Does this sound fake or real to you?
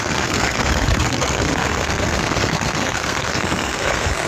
fake